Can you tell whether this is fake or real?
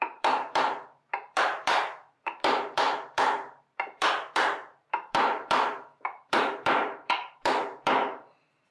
fake